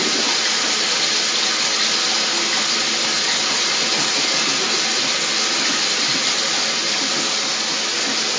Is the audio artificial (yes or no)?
no